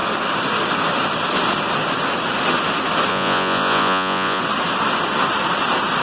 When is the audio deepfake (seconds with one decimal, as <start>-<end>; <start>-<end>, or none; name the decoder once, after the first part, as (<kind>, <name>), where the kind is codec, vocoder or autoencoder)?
3.1-4.4 (vocoder, Vocos)